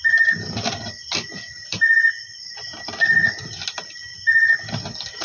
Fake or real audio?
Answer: real